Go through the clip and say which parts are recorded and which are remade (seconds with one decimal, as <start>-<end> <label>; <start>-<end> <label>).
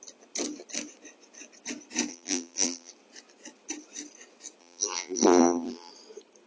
0.0-2.1 recorded; 2.1-2.9 remade; 2.9-4.6 recorded; 4.6-5.9 remade; 5.9-6.5 recorded